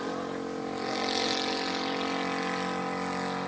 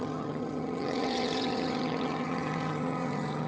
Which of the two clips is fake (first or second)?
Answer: second